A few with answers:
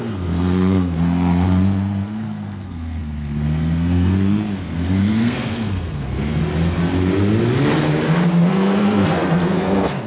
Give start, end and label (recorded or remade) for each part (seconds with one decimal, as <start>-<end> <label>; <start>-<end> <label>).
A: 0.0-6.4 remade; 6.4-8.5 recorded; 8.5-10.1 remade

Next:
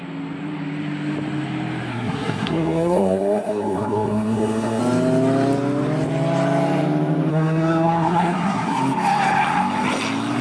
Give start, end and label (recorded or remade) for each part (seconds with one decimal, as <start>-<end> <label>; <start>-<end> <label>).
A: 0.0-1.9 recorded; 1.9-4.8 remade; 4.8-7.3 recorded; 7.3-8.8 remade; 8.8-10.4 recorded

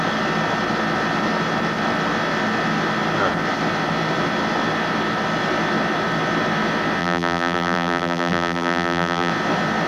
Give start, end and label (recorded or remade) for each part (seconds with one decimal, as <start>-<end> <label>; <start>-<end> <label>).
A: 0.0-7.0 recorded; 7.0-9.3 remade; 9.3-9.9 recorded

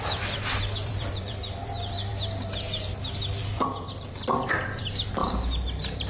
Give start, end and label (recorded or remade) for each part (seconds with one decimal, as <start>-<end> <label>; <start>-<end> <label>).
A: 0.0-2.1 remade; 2.1-3.4 recorded; 3.4-5.2 remade; 5.2-6.1 recorded

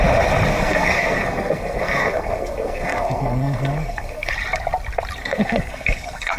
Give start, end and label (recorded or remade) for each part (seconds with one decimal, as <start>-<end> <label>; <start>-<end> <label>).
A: 0.0-0.5 recorded; 0.5-4.3 remade; 4.3-5.2 recorded; 5.2-6.4 remade

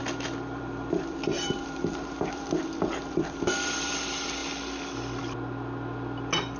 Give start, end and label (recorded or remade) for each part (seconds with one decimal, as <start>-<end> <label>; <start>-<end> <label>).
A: 0.0-4.0 remade; 4.0-6.6 recorded

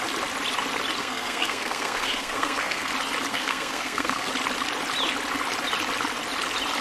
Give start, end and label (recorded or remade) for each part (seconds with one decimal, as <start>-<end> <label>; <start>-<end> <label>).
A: 0.0-1.0 recorded; 1.0-2.9 remade; 2.9-3.3 recorded; 3.3-4.3 remade; 4.3-6.8 recorded